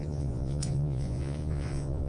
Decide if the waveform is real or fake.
fake